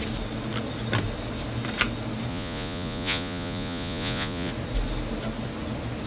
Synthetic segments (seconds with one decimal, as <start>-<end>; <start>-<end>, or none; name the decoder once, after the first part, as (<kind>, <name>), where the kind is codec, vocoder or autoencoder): 2.3-4.5 (vocoder, Vocos)